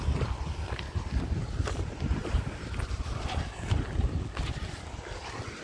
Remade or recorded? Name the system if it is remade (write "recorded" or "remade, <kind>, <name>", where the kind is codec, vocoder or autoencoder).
recorded